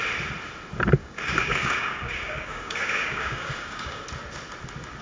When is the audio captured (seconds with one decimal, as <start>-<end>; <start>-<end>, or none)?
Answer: 0.0-1.0; 4.0-5.0